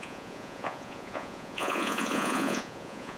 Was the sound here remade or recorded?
remade